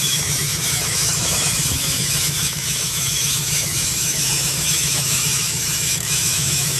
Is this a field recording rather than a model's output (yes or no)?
no